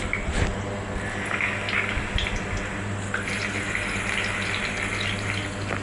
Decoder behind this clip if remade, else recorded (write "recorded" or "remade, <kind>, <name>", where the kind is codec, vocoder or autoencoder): recorded